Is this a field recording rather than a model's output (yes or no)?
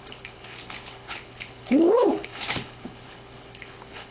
no